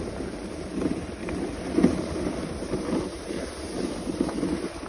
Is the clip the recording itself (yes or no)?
yes